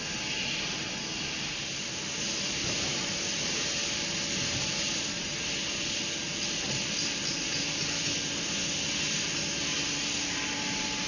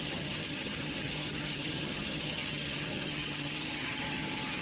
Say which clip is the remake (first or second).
second